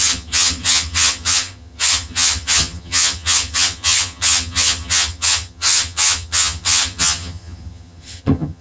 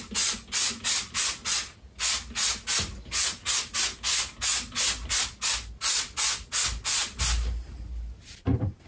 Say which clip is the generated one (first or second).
first